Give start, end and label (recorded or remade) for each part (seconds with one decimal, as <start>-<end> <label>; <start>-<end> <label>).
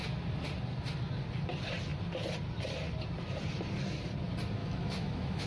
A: 0.0-4.6 recorded; 4.6-5.5 remade